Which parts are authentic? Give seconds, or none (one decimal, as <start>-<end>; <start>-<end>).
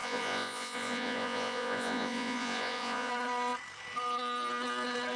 3.1-5.2